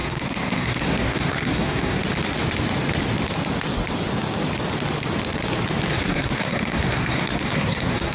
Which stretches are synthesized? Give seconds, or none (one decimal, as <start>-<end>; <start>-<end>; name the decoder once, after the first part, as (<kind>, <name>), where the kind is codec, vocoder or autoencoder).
0.0-2.0 (codec, SNAC); 5.9-8.1